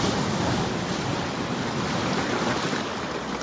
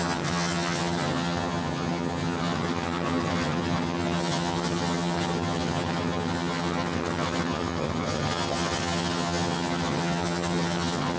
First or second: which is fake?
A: second